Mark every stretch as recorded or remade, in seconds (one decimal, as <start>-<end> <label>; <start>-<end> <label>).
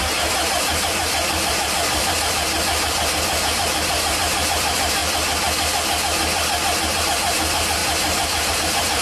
0.0-5.0 remade; 5.0-7.0 recorded; 7.0-9.0 remade